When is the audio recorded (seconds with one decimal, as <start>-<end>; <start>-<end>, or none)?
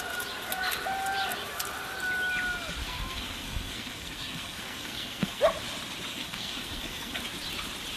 0.0-2.8; 5.4-6.1; 7.2-8.0